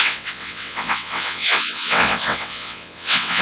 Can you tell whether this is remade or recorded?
remade